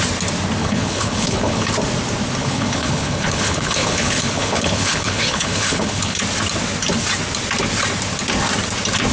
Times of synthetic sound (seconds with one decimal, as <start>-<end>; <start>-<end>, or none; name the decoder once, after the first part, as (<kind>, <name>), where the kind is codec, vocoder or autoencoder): 0.6-1.7 (codec, HILCodec); 2.4-6.2